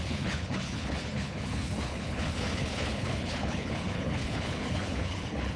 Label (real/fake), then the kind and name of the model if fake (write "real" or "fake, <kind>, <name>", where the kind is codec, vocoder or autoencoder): fake, codec, HILCodec